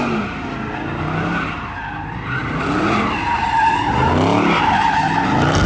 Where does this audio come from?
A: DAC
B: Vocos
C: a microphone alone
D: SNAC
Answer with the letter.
C